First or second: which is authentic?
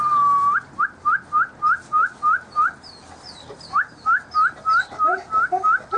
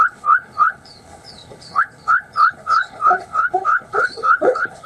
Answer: first